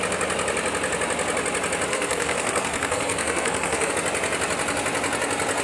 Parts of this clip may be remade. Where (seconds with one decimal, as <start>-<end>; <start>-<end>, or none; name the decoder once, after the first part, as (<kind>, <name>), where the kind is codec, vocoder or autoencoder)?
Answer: 1.9-3.9 (codec, SNAC)